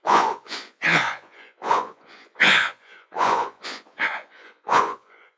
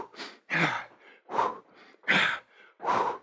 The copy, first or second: first